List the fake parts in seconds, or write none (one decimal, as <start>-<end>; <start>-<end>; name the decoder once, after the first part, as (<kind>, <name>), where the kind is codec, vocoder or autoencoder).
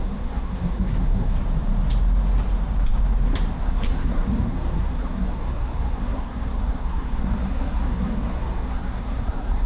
0.0-1.3 (codec, SNAC); 3.6-9.7